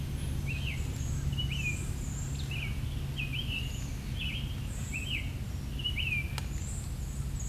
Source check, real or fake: real